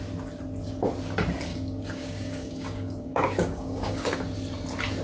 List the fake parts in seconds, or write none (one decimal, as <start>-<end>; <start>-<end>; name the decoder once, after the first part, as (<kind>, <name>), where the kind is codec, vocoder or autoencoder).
1.5-4.2 (codec, DAC)